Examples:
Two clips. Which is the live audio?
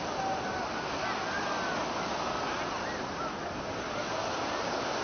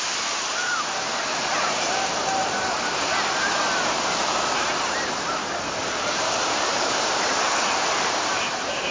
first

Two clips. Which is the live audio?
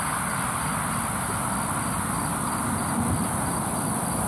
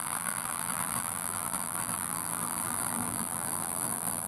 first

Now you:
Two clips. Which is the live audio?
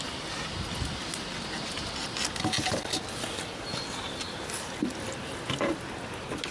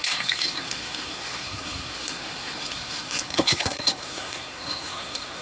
first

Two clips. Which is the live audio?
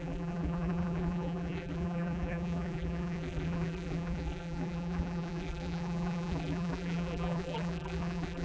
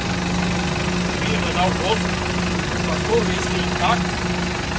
second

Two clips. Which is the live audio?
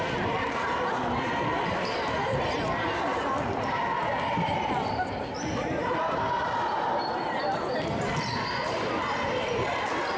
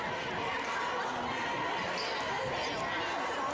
second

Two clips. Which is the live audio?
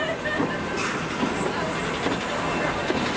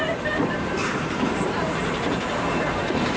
first